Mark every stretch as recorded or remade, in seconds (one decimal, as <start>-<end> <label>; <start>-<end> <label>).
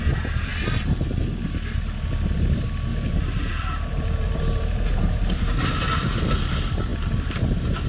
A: 0.0-2.9 recorded; 2.9-6.1 remade; 6.1-7.9 recorded